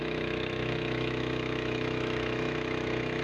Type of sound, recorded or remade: remade